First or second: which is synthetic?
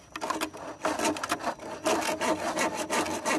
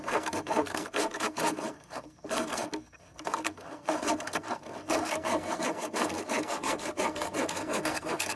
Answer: second